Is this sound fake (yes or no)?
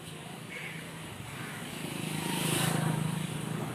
yes